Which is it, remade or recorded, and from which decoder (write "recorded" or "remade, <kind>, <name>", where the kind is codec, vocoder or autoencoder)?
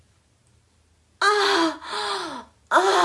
recorded